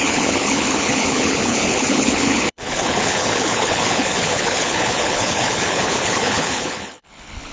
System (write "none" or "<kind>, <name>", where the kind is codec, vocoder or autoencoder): codec, HILCodec